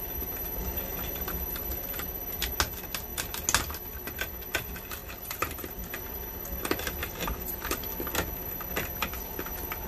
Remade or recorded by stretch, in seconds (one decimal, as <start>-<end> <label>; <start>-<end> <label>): 0.0-0.6 recorded; 0.6-1.3 remade; 1.3-5.0 recorded; 5.0-5.9 remade; 5.9-7.0 recorded; 7.0-7.8 remade; 7.8-9.9 recorded